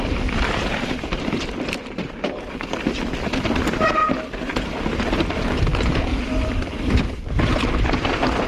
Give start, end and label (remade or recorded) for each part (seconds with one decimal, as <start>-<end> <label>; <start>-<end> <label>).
0.0-4.0 remade; 4.0-5.6 recorded; 5.6-8.5 remade